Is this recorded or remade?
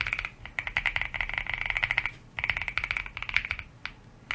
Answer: recorded